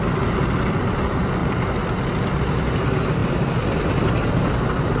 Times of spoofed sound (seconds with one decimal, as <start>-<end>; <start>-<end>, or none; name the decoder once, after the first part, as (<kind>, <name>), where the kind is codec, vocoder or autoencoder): none